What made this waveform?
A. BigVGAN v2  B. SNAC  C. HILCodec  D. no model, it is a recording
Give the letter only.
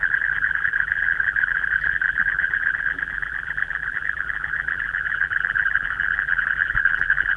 A